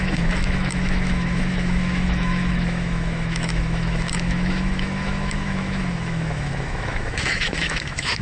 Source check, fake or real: fake